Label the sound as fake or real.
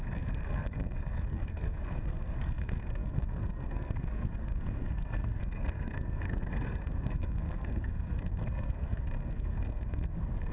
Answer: fake